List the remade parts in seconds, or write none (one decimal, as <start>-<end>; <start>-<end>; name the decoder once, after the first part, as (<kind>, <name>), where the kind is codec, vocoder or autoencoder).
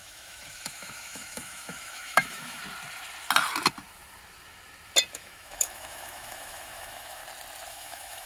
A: 0.0-2.6 (autoencoder, DAC-VAE); 5.1-7.2; 7.7-8.3